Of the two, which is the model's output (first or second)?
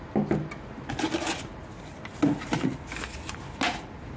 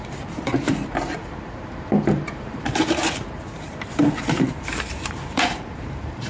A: second